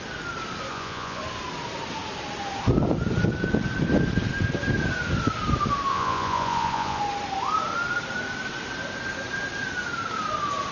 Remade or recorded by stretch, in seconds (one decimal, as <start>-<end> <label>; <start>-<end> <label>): 0.0-0.7 recorded; 0.7-1.2 remade; 1.2-5.9 recorded; 5.9-7.0 remade; 7.0-10.7 recorded